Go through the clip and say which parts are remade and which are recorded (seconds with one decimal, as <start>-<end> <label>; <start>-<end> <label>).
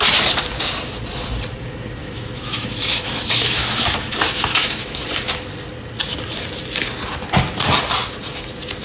0.0-2.0 recorded; 2.0-5.0 remade; 5.0-8.8 recorded